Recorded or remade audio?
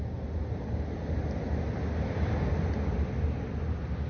recorded